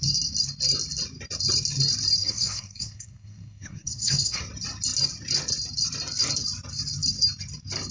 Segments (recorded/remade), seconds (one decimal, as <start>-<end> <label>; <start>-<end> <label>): 0.0-2.2 recorded; 2.2-4.4 remade; 4.4-7.9 recorded